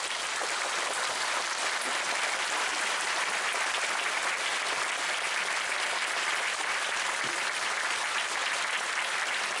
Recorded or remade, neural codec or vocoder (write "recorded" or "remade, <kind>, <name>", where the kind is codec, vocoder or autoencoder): recorded